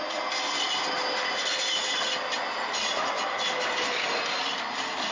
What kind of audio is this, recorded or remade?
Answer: recorded